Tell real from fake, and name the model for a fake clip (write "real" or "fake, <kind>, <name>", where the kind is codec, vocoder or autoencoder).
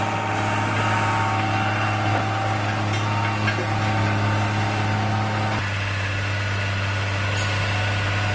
real